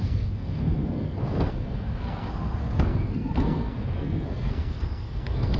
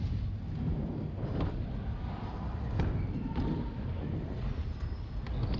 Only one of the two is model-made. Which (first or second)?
first